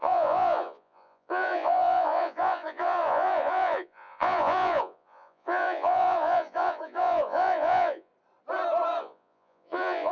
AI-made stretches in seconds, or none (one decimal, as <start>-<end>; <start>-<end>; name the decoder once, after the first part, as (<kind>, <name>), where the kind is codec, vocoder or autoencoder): 0.0-8.1 (vocoder, Vocos); 9.0-10.1

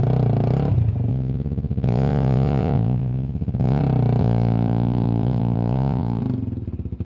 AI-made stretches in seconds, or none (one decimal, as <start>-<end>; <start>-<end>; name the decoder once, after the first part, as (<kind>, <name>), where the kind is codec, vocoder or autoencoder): 1.1-3.8 (vocoder, Vocos); 4.2-6.2

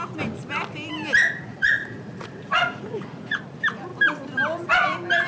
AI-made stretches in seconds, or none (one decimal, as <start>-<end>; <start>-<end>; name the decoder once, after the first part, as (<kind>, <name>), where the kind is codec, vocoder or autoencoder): 1.5-3.4 (vocoder, Vocos)

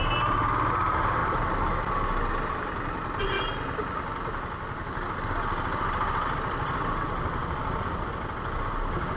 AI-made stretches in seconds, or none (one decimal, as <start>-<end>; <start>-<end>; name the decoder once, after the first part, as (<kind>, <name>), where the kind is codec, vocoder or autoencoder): none

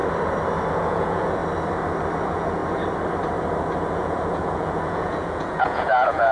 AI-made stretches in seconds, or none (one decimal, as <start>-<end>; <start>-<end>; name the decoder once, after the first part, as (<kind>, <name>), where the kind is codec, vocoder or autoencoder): 0.7-1.4 (vocoder, Vocos); 2.2-2.6; 3.9-6.3